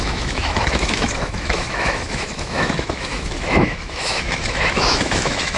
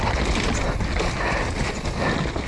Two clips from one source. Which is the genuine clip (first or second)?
second